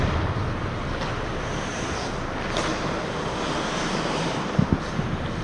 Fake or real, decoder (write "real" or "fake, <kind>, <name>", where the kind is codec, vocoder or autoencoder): real